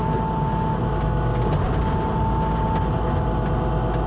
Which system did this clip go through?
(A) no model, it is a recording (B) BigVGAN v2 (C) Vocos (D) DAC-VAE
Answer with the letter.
A